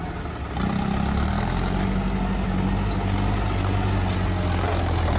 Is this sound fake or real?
real